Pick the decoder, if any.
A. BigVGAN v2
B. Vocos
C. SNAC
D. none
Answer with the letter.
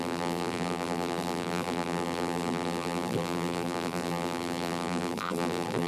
A